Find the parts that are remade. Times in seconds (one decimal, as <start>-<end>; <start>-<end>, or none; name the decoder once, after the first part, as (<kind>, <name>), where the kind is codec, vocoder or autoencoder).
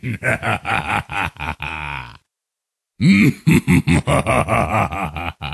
0.0-1.6 (autoencoder, DAC-VAE)